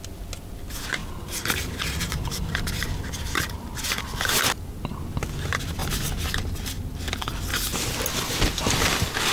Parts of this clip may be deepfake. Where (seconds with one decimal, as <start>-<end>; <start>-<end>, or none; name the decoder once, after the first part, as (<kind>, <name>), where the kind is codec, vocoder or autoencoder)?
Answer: 1.0-4.0 (vocoder, BigVGAN v2); 5.8-7.0